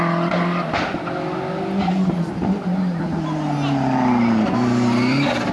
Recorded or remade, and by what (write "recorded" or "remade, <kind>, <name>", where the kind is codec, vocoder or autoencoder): recorded